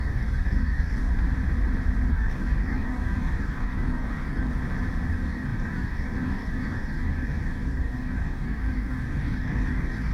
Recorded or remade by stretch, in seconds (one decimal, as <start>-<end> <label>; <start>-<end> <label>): 0.0-1.1 remade; 1.1-2.1 recorded; 2.1-4.5 remade; 4.5-5.1 recorded; 5.1-10.1 remade